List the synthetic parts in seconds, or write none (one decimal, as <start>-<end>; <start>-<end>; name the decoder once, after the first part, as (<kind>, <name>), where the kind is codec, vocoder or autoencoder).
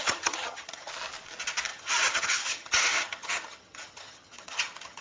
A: 0.0-0.9 (vocoder, HiFi-GAN); 1.7-5.0